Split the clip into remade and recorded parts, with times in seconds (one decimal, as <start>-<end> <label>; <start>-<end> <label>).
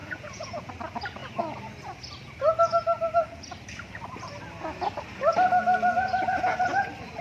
0.0-0.7 remade; 0.7-7.2 recorded